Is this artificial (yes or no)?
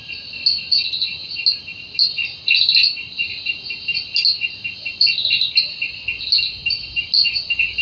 no